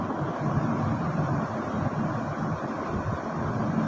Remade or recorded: recorded